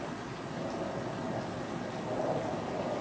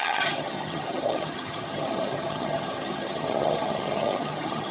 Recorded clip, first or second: first